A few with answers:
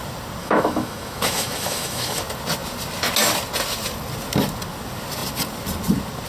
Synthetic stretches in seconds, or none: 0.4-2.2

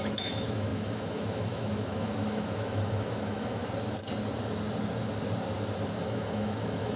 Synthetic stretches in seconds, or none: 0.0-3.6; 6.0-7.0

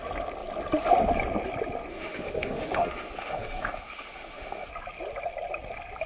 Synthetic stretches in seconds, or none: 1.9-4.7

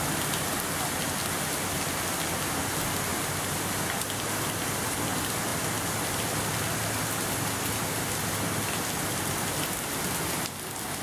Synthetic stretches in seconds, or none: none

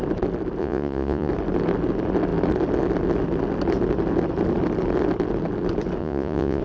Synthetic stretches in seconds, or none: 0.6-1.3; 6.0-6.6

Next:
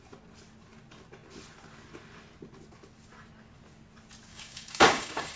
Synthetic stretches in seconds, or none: 4.3-5.4

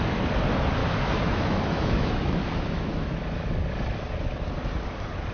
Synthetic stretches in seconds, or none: 0.8-3.1